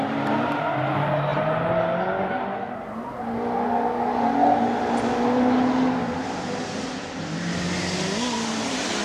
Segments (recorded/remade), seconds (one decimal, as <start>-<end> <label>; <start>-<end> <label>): 0.0-9.0 recorded